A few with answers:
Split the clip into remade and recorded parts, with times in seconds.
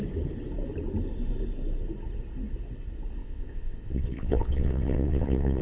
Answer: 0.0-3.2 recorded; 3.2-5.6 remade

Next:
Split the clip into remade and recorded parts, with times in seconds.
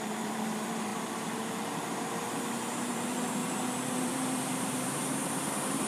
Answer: 0.0-3.4 remade; 3.4-3.9 recorded; 3.9-5.9 remade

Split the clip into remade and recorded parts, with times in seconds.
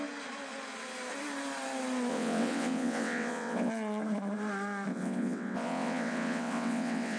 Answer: 0.0-2.1 recorded; 2.1-3.7 remade; 3.7-4.9 recorded; 4.9-7.2 remade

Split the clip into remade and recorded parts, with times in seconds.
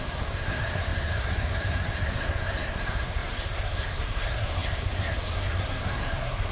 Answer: 0.0-6.5 remade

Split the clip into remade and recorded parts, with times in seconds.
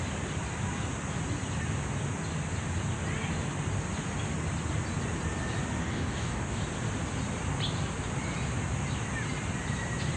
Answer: 0.0-5.8 recorded; 5.8-6.6 remade; 6.6-10.2 recorded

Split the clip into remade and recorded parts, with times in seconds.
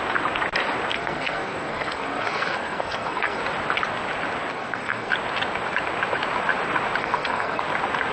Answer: 0.0-0.9 recorded; 0.9-3.4 remade; 3.4-4.5 recorded; 4.5-5.1 remade; 5.1-7.0 recorded; 7.0-7.6 remade; 7.6-8.1 recorded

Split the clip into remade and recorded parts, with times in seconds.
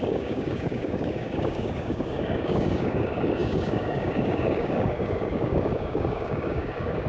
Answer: 0.0-7.1 remade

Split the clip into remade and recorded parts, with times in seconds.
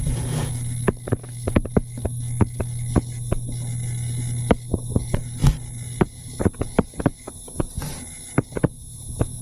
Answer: 0.0-9.4 recorded